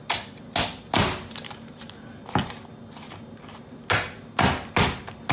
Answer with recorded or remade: recorded